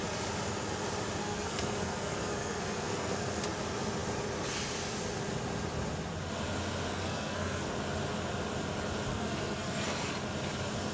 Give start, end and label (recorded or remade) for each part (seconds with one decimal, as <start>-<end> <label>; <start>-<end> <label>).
0.0-1.2 recorded; 1.2-3.4 remade; 3.4-6.9 recorded; 6.9-7.7 remade; 7.7-9.1 recorded; 9.1-10.1 remade; 10.1-10.9 recorded